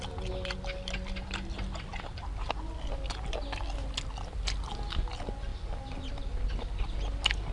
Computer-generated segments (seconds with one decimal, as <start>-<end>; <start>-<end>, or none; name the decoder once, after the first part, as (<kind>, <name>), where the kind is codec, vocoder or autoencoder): none